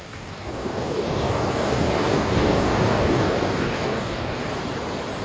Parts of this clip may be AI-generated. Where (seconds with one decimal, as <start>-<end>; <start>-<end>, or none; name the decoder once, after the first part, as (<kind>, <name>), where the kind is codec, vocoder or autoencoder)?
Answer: 0.0-4.4 (codec, DAC)